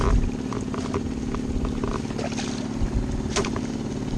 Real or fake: real